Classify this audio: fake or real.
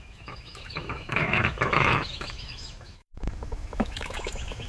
fake